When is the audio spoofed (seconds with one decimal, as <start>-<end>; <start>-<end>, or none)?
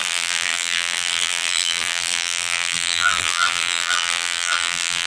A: 0.0-5.1